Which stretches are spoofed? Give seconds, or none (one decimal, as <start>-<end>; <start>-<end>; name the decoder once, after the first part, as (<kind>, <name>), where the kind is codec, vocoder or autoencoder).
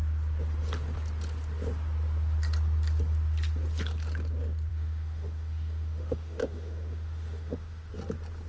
4.7-7.9 (autoencoder, DAC-VAE)